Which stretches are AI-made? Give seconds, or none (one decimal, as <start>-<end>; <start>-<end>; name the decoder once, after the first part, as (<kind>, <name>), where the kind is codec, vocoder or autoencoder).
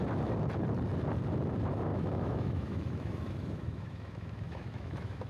1.9-5.3 (autoencoder, DAC-VAE)